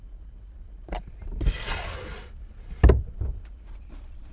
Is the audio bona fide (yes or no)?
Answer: yes